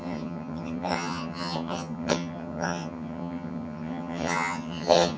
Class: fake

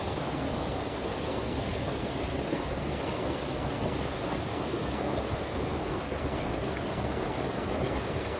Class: fake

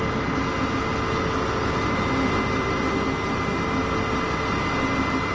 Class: real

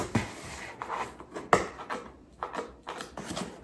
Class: real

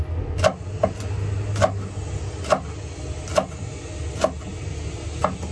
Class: real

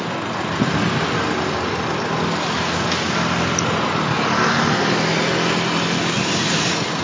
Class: real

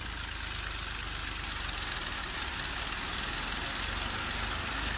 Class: real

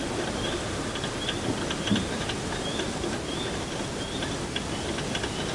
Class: real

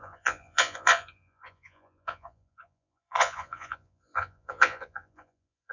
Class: fake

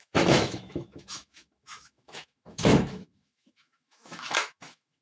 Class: fake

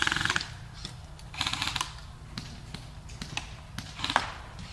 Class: real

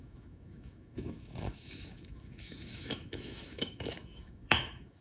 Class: fake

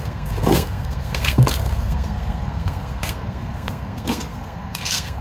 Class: fake